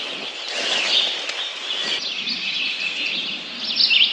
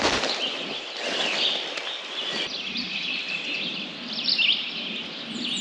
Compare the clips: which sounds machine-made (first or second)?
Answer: second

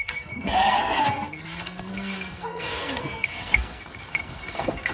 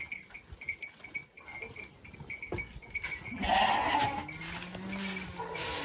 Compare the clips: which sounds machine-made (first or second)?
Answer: first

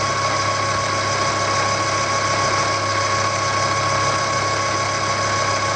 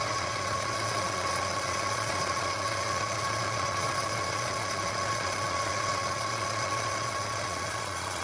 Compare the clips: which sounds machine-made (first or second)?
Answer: second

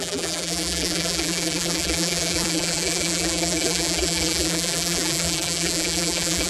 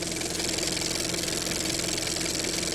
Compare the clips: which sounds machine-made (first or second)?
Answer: first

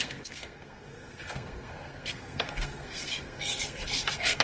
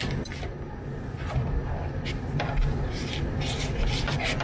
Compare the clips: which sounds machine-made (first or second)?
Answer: first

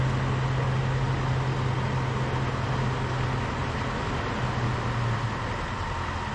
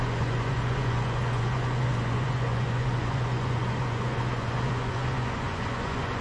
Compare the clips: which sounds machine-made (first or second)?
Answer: second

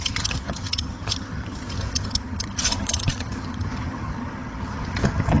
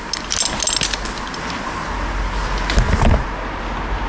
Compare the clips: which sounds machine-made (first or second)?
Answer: first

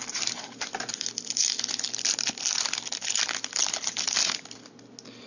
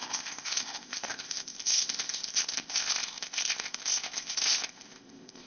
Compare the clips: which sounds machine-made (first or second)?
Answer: second